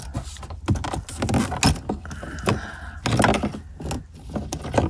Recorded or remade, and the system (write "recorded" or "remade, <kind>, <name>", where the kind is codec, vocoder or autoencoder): recorded